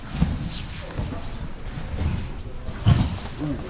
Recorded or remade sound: recorded